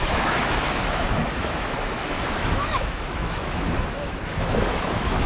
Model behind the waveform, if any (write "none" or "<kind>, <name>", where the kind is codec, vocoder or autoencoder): autoencoder, DAC-VAE